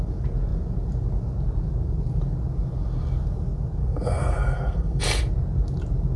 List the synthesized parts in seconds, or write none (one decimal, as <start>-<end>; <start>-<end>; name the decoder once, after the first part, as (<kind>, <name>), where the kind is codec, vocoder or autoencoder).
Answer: 3.8-5.0 (codec, SNAC)